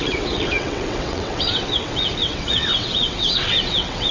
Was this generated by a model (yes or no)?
yes